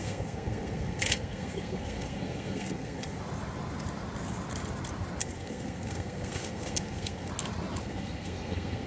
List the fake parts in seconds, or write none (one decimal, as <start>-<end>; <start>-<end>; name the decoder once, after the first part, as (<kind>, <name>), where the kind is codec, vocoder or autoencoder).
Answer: 0.0-3.2 (codec, SNAC); 5.2-7.3; 7.8-8.9